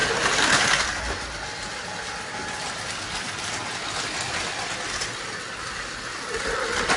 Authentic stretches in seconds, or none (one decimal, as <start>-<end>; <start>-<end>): 0.0-7.0

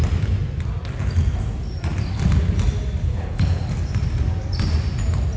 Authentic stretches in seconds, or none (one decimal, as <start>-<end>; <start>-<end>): 0.0-3.1; 3.7-5.4

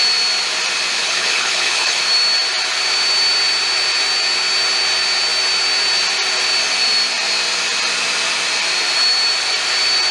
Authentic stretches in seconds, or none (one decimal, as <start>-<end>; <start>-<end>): 0.0-1.0; 2.0-10.1

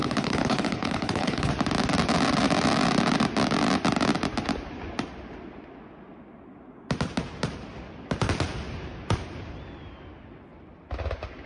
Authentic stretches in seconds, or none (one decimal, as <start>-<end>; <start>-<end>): 1.5-11.5